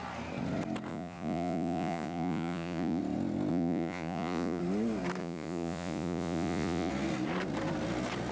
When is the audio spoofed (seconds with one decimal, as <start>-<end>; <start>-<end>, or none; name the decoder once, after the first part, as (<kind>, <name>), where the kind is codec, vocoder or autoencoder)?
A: 0.9-3.0 (vocoder, Vocos); 3.5-4.6; 5.2-6.9